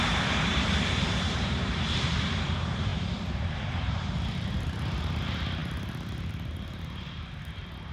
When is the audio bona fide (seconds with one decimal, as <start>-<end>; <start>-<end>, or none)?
2.9-3.5